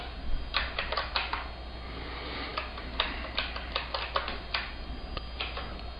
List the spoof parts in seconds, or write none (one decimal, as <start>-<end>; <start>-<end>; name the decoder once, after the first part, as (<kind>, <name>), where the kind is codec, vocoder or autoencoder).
none